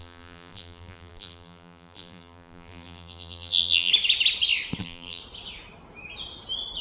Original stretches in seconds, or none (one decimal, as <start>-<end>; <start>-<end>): 3.9-4.8; 5.2-6.8